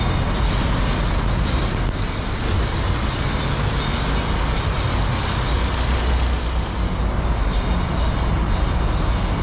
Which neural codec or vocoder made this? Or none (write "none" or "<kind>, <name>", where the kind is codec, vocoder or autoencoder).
none